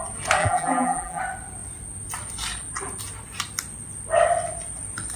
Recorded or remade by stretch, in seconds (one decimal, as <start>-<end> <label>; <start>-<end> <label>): 0.0-0.4 recorded; 0.4-1.2 remade; 1.2-5.2 recorded